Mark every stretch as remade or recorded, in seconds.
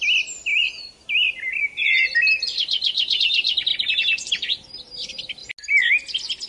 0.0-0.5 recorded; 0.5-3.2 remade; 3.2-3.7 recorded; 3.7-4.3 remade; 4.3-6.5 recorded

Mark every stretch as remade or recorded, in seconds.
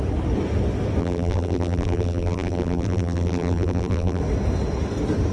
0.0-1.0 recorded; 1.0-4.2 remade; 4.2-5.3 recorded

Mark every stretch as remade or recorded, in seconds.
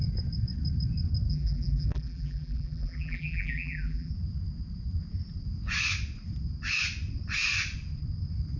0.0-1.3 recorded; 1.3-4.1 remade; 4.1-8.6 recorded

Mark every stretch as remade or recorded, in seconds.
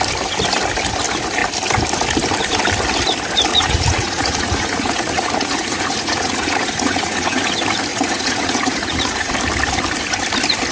0.0-3.5 recorded; 3.5-7.4 remade; 7.4-7.9 recorded; 7.9-9.3 remade; 9.3-10.7 recorded